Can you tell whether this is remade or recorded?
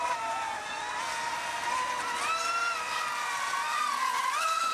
recorded